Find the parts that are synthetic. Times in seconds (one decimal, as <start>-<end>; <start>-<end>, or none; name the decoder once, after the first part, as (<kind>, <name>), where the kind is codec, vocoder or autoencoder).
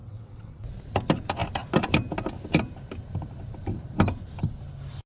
0.0-0.5 (vocoder, WaveNeXt)